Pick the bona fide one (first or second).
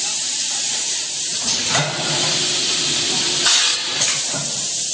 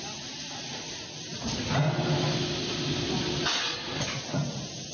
second